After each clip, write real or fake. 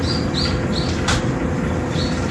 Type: real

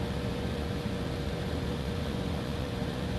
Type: fake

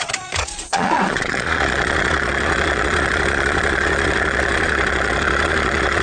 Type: fake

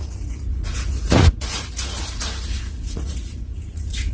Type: fake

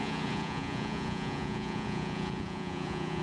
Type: fake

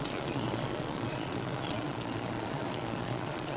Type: fake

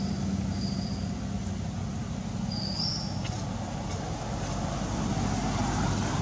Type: real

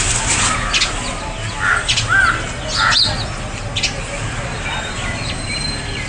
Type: real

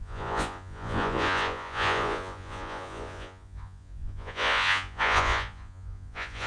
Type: fake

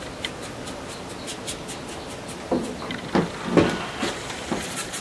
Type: real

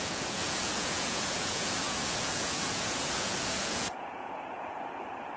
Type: fake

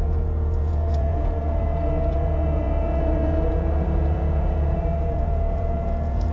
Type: fake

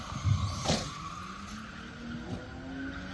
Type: real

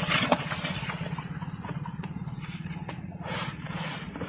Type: fake